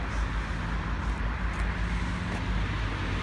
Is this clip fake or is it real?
real